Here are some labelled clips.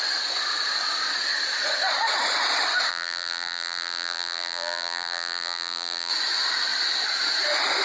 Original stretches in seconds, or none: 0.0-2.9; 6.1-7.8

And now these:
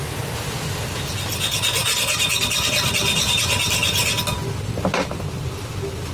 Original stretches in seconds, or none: 0.0-6.1